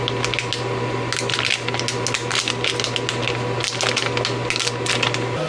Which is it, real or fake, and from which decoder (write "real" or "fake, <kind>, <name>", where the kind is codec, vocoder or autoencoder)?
real